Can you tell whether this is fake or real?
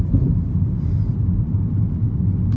fake